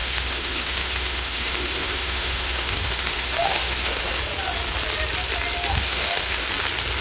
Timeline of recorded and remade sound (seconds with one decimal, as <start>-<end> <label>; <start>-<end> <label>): 0.0-4.2 remade; 4.2-5.7 recorded; 5.7-6.4 remade; 6.4-7.0 recorded

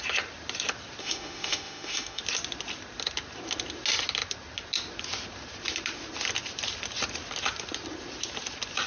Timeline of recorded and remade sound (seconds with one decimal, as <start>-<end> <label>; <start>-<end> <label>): 0.0-1.0 recorded; 1.0-2.2 remade; 2.2-8.9 recorded

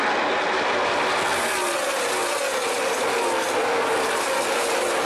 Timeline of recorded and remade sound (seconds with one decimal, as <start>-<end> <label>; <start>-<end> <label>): 0.0-5.1 recorded

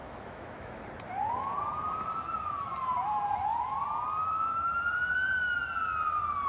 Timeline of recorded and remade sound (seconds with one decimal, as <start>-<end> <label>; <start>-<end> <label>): 0.0-0.8 remade; 0.8-4.2 recorded; 4.2-4.8 remade; 4.8-6.5 recorded

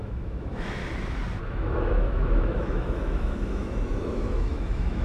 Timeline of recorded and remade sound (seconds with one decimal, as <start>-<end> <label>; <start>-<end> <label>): 0.0-0.8 remade; 0.8-1.4 recorded; 1.4-5.0 remade